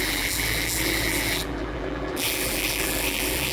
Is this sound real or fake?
fake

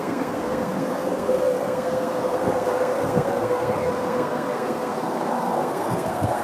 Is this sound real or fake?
fake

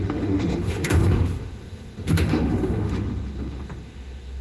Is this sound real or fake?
fake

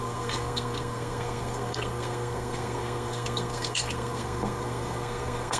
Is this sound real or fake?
fake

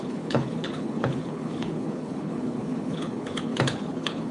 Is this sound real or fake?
fake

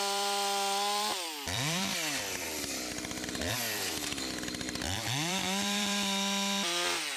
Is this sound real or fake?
fake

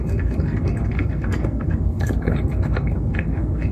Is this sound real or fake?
fake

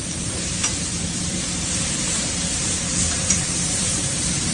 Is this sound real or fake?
fake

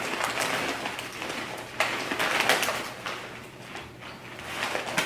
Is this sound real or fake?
real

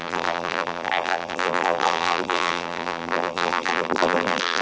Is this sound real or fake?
fake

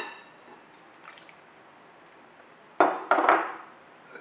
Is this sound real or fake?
real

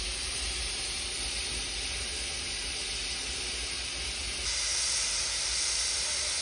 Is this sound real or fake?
real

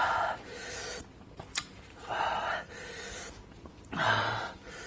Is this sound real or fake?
real